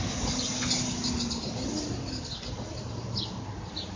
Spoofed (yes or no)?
no